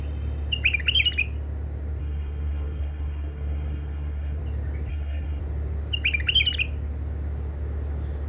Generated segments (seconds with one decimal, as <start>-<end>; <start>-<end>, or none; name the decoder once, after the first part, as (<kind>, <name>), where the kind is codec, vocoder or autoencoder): 2.0-4.4 (codec, SNAC); 4.9-5.4